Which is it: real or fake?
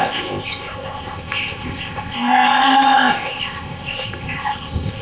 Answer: fake